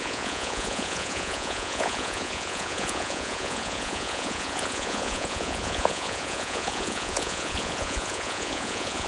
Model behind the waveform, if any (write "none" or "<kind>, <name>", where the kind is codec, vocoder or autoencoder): vocoder, Vocos